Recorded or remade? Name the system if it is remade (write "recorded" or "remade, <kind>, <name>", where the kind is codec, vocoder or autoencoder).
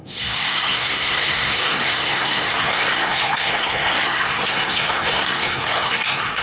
remade, codec, SNAC